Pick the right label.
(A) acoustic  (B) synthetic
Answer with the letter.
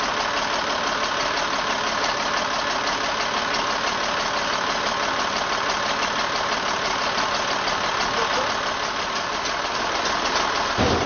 A